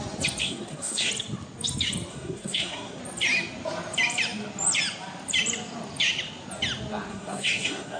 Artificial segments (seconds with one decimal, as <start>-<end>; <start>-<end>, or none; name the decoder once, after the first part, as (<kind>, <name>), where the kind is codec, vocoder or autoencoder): 0.4-1.1 (codec, SNAC); 2.1-3.0; 7.1-8.0